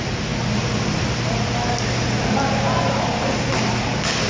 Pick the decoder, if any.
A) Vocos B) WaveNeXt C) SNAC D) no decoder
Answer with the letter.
D